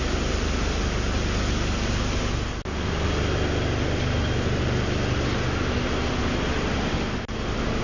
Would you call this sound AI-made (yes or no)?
no